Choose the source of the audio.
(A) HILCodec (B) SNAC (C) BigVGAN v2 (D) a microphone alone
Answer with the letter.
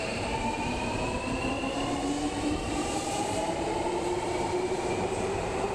C